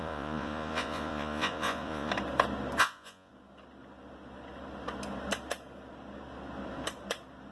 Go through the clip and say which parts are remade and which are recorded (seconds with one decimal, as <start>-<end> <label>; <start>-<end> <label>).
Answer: 0.0-2.1 remade; 2.1-2.8 recorded; 2.8-3.3 remade; 3.3-7.5 recorded